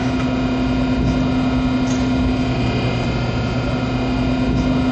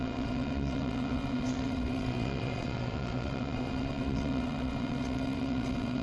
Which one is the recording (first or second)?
first